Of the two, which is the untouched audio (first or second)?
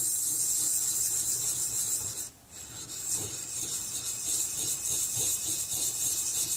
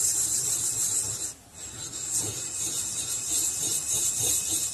first